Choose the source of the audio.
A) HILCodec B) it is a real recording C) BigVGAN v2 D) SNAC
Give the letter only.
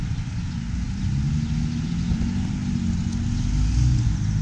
B